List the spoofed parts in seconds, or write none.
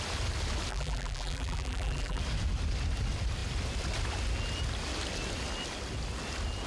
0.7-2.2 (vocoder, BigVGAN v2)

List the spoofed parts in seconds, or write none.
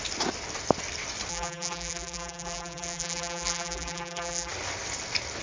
1.3-4.5 (vocoder, BigVGAN v2)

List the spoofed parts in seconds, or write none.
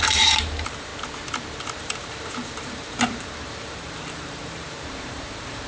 0.0-0.9 (vocoder, BigVGAN v2); 1.8-5.7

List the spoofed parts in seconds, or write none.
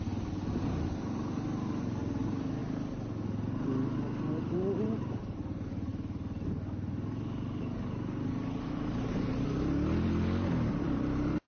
0.0-2.6 (vocoder, BigVGAN v2); 4.4-5.9; 10.7-11.5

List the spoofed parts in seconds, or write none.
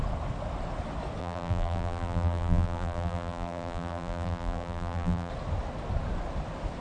1.2-5.3 (vocoder, BigVGAN v2)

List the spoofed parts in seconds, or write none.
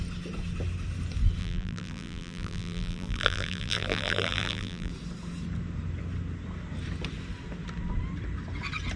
1.4-4.9 (vocoder, BigVGAN v2)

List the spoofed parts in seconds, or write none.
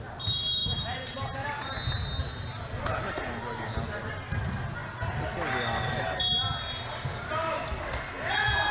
none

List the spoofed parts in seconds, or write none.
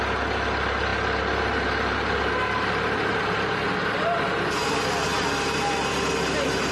none